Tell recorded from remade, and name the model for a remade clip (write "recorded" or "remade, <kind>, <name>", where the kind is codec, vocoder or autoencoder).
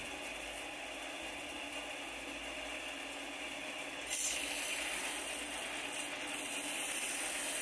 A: recorded